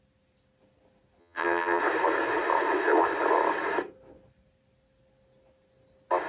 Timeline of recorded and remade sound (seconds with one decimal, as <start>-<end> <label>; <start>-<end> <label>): 0.0-1.2 recorded; 1.2-1.8 remade; 1.8-6.3 recorded